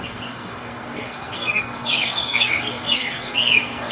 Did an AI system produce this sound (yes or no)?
yes